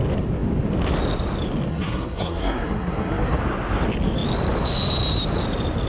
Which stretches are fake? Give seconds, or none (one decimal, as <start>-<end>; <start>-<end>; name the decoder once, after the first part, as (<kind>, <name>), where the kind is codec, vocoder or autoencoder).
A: 1.7-3.4 (codec, SNAC)